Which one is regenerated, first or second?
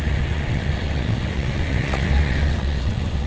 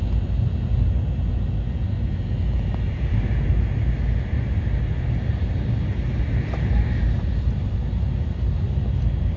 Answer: first